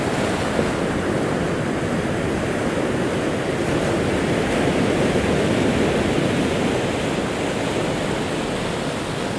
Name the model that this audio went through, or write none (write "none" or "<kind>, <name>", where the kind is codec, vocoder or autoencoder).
none